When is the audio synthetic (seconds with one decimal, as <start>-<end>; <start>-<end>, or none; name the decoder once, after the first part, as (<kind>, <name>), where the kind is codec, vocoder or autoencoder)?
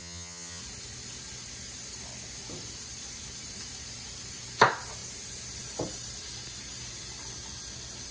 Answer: 0.0-0.6 (vocoder, HiFi-GAN)